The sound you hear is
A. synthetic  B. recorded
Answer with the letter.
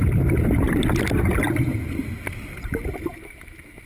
B